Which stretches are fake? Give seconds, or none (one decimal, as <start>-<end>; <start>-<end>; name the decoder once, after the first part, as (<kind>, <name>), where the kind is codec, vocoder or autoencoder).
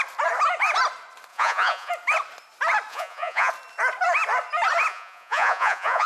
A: 1.3-1.9 (vocoder, Vocos); 2.9-3.5; 4.9-6.1